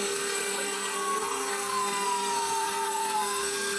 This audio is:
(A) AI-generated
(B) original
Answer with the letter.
A